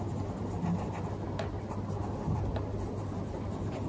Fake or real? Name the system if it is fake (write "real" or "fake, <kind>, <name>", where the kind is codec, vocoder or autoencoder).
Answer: real